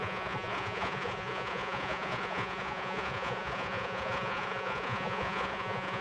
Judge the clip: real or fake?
fake